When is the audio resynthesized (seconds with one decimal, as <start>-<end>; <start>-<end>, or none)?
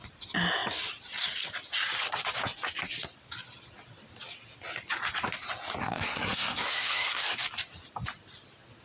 5.8-7.2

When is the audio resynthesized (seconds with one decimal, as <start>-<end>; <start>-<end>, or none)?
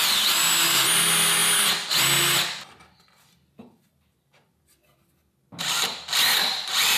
none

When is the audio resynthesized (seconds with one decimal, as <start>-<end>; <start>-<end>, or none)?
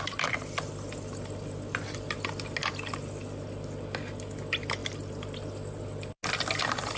none